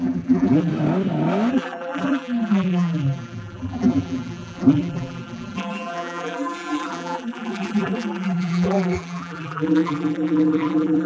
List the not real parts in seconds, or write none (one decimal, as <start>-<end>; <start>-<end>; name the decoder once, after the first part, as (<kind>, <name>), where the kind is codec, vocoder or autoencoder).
0.0-0.7 (vocoder, BigVGAN v2); 1.5-11.1